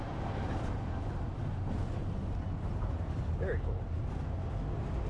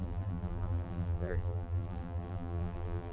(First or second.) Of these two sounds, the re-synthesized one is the second